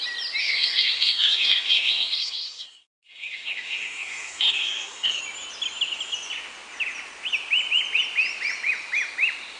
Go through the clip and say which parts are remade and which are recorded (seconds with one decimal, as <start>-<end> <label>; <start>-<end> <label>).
0.0-0.4 recorded; 0.4-5.2 remade; 5.2-9.6 recorded